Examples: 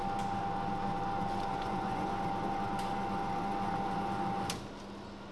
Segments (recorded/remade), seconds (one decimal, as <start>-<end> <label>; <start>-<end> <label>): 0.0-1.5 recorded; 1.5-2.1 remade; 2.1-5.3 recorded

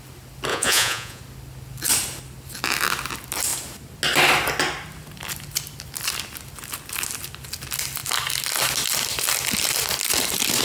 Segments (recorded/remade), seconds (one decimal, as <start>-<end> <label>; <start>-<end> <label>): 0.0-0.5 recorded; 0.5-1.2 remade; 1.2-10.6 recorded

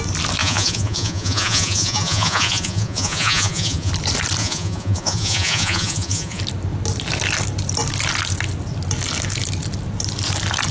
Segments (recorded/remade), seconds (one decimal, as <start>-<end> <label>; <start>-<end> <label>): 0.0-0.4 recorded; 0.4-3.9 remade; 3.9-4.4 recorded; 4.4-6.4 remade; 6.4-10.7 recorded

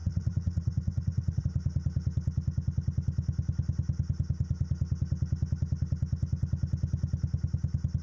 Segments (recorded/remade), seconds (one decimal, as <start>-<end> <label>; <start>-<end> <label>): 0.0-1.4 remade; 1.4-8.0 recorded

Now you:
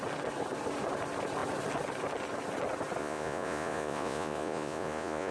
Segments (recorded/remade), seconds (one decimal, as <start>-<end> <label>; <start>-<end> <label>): 0.0-3.0 recorded; 3.0-5.3 remade